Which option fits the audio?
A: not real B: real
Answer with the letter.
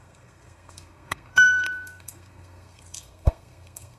A